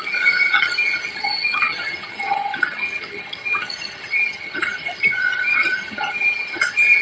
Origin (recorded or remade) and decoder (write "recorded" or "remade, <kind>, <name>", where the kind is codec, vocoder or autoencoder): remade, vocoder, HiFi-GAN